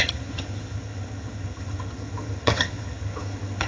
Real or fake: fake